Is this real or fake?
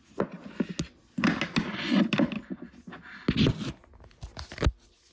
real